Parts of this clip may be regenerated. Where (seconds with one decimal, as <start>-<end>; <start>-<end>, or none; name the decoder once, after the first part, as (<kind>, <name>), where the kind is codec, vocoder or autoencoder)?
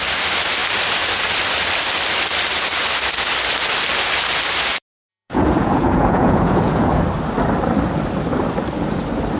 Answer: 5.1-7.0 (vocoder, Vocos)